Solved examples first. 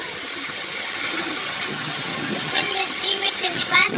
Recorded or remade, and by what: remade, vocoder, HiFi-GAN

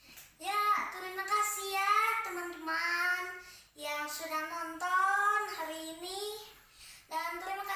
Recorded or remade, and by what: recorded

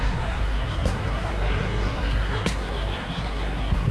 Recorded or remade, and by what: remade, codec, SNAC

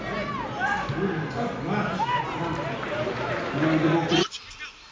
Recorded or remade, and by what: recorded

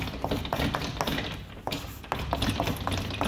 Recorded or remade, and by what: recorded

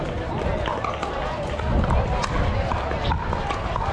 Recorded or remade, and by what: recorded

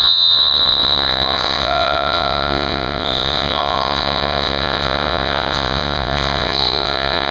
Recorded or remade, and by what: remade, vocoder, WaveNeXt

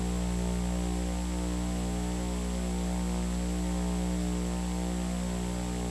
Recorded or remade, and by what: recorded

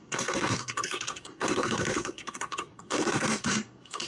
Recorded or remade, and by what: remade, codec, SNAC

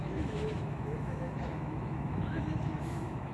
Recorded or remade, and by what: remade, autoencoder, DAC-VAE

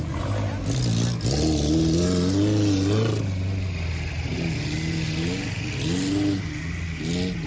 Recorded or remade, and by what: recorded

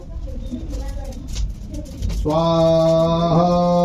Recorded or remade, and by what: recorded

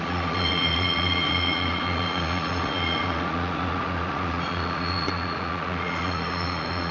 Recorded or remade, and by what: remade, vocoder, Vocos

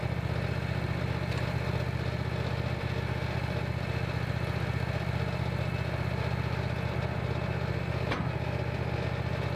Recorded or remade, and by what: recorded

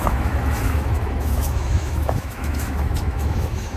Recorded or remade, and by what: remade, autoencoder, DAC-VAE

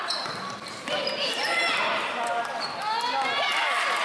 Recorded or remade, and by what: recorded